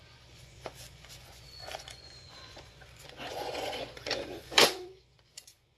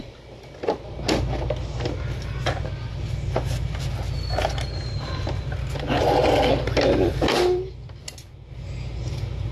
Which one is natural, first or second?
second